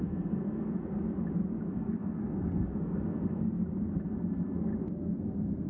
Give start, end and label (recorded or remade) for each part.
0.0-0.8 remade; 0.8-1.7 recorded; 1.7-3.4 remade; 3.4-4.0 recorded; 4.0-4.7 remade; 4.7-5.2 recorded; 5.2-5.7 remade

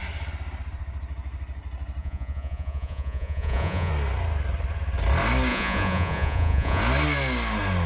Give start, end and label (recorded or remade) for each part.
0.0-2.0 recorded; 2.0-3.9 remade; 3.9-5.5 recorded; 5.5-6.8 remade; 6.8-7.9 recorded

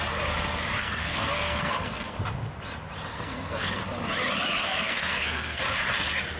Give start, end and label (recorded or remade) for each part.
0.0-0.8 recorded; 0.8-2.2 remade; 2.2-3.1 recorded; 3.1-3.8 remade; 3.8-4.6 recorded; 4.6-5.6 remade; 5.6-6.4 recorded

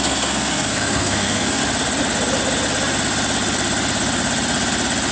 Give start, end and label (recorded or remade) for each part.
0.0-1.6 remade; 1.6-5.1 recorded

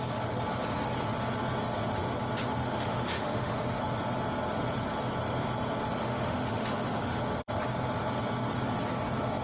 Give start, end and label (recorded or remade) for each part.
0.0-2.6 recorded; 2.6-3.8 remade; 3.8-6.0 recorded; 6.0-7.2 remade; 7.2-9.4 recorded